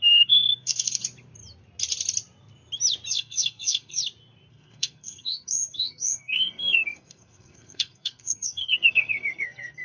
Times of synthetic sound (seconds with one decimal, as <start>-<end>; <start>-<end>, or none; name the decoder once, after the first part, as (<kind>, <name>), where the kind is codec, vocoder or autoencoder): 0.0-1.0 (codec, SNAC); 3.1-4.0; 4.5-9.8